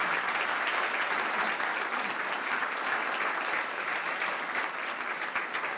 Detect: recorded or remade recorded